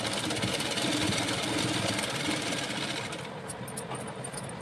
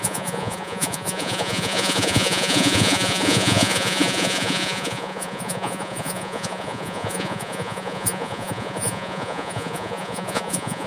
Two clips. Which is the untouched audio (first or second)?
first